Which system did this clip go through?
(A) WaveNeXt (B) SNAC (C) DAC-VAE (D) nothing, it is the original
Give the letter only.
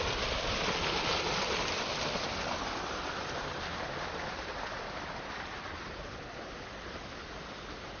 D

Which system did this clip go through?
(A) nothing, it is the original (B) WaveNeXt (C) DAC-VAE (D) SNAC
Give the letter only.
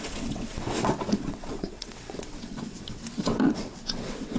B